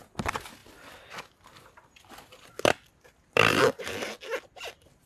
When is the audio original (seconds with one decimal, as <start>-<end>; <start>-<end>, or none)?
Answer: 0.0-5.1